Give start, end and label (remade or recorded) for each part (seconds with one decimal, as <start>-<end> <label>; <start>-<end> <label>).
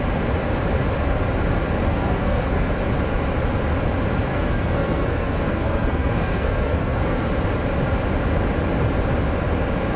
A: 0.0-1.9 recorded; 1.9-2.7 remade; 2.7-4.3 recorded; 4.3-7.3 remade; 7.3-10.0 recorded